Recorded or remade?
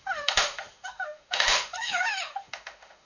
remade